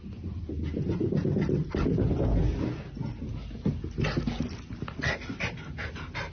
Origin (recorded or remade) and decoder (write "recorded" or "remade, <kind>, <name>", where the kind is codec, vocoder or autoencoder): recorded